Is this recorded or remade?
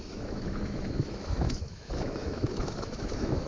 remade